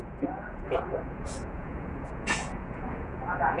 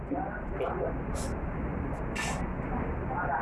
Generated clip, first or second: first